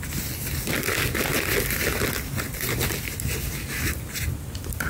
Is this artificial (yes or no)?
no